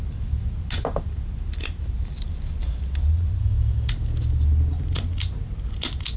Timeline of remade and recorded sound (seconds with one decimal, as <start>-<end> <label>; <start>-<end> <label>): 0.0-3.4 recorded; 3.4-3.9 remade; 3.9-6.2 recorded